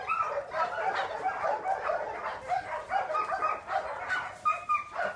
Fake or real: real